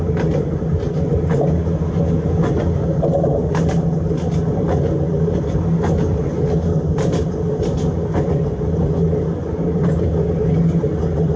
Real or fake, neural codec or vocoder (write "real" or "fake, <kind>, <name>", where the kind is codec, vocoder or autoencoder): real